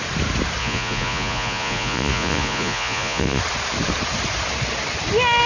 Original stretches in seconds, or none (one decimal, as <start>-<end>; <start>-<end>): 0.0-0.6; 3.4-5.5